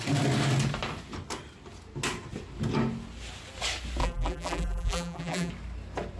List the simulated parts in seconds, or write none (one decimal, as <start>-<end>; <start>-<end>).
4.0-5.5